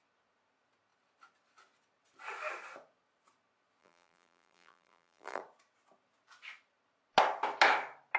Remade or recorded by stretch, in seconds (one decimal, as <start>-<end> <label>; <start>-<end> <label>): 0.0-3.8 recorded; 3.8-5.4 remade; 5.4-8.2 recorded